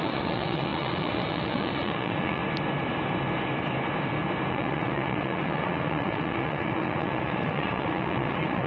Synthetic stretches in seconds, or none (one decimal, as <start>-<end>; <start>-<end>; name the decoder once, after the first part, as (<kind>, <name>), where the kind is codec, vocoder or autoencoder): 0.0-2.4 (vocoder, Vocos); 4.5-8.7